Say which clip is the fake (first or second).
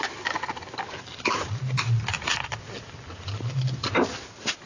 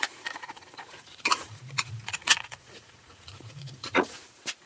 second